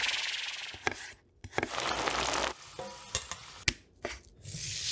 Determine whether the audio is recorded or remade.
recorded